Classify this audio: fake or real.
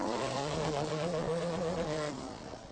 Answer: fake